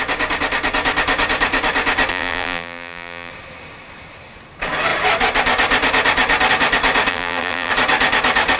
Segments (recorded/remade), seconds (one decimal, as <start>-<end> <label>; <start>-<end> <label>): 0.0-2.1 recorded; 2.1-3.3 remade; 3.3-7.1 recorded; 7.1-7.7 remade; 7.7-8.6 recorded